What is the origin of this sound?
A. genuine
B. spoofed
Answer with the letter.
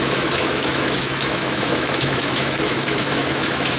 B